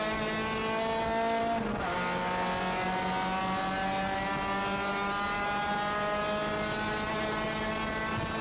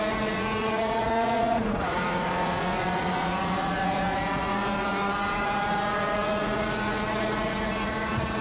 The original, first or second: first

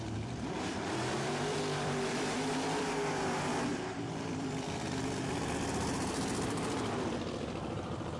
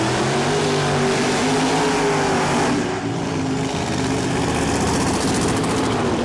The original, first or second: second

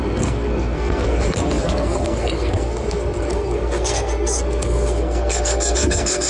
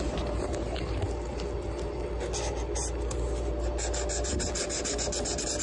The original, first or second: second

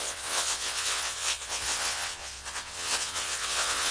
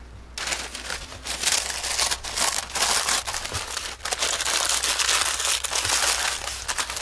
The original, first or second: second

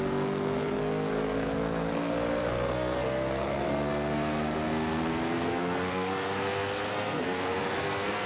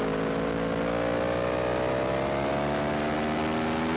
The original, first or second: second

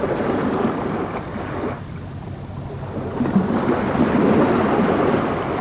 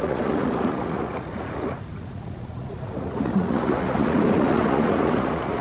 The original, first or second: first